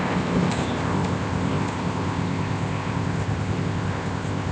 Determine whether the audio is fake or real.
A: fake